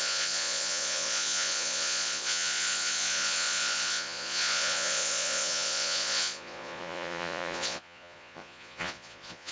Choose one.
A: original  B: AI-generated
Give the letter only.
B